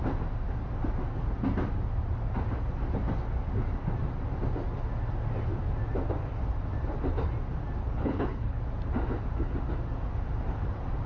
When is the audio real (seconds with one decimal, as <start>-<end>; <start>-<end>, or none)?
0.0-7.8; 8.6-11.1